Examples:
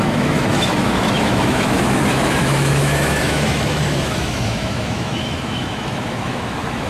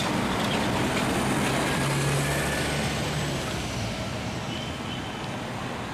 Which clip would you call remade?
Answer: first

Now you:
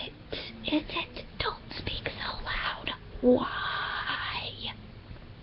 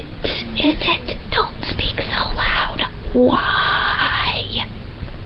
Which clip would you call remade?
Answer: second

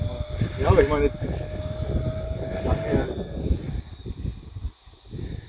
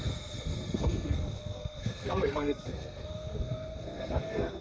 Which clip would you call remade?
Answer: second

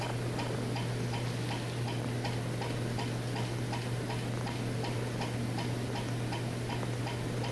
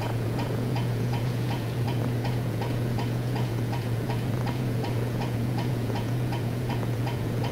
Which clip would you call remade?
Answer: second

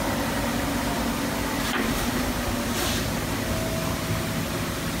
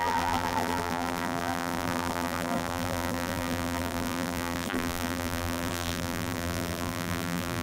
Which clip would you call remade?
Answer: second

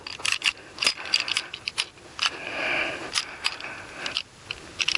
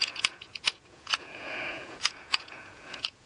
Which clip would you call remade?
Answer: second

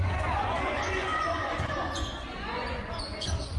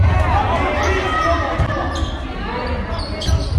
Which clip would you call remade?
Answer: first